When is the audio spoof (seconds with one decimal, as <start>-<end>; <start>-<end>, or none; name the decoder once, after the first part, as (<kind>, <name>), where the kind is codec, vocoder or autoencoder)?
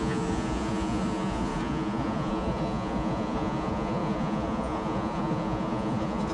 0.0-6.3 (vocoder, Vocos)